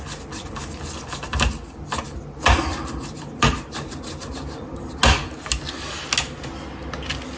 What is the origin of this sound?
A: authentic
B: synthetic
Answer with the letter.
A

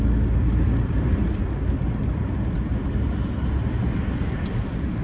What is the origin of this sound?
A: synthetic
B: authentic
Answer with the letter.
B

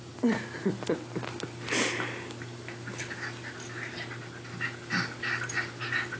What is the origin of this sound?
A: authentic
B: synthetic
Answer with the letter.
A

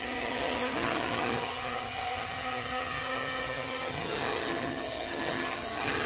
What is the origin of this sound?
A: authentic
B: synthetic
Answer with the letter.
B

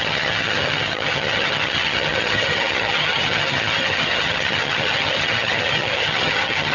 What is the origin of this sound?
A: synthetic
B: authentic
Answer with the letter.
A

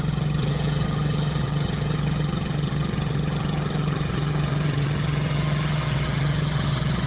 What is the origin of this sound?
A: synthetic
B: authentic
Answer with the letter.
A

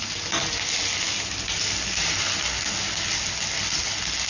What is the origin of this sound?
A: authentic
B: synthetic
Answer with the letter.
A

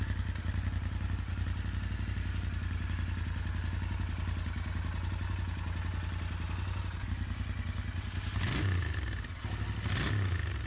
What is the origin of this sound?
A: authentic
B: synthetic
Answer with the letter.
A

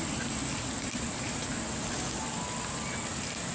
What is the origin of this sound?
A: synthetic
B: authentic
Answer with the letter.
B